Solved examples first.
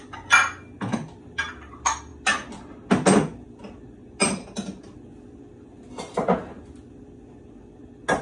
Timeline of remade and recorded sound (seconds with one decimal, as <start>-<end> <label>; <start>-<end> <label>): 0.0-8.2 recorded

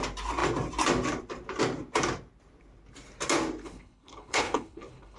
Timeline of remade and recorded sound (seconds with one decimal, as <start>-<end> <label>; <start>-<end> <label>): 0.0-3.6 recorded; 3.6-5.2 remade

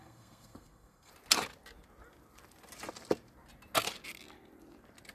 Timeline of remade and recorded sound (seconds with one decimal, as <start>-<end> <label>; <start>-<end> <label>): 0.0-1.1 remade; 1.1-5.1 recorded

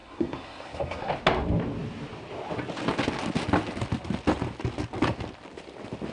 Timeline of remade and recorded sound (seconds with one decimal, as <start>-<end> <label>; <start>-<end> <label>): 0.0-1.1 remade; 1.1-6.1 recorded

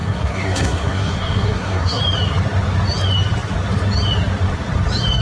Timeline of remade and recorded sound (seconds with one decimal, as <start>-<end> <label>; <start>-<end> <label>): 0.0-2.0 remade; 2.0-5.2 recorded

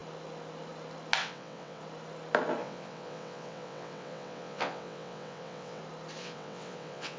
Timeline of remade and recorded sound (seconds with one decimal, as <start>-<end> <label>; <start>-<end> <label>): 0.0-1.2 recorded; 1.2-1.8 remade; 1.8-2.6 recorded; 2.6-5.8 remade; 5.8-6.2 recorded; 6.2-7.2 remade